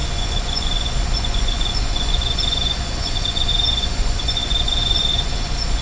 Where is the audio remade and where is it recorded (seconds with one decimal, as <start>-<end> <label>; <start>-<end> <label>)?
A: 0.0-5.8 remade